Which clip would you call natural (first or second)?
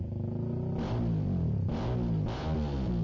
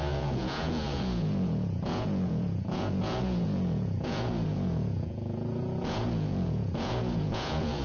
first